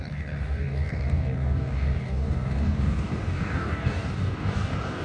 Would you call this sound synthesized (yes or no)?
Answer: yes